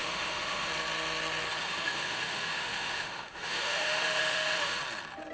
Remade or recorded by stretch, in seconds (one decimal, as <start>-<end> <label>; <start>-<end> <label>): 0.0-0.7 remade; 0.7-1.6 recorded; 1.6-4.8 remade; 4.8-5.3 recorded